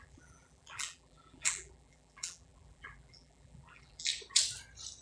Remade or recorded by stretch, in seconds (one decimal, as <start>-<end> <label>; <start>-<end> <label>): 0.0-4.1 remade; 4.1-5.0 recorded